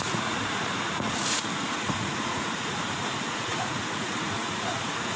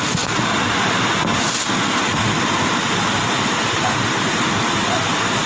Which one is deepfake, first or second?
first